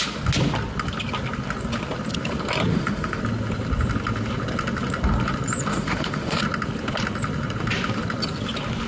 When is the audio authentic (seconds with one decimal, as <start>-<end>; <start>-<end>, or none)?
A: 0.0-2.7; 3.2-5.7; 6.4-8.9